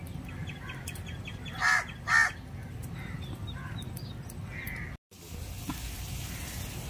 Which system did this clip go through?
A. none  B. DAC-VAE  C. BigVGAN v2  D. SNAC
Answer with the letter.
A